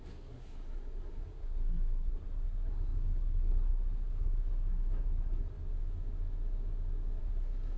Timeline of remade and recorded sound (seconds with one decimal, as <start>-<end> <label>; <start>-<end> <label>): 0.0-5.5 remade; 5.5-7.2 recorded; 7.2-7.8 remade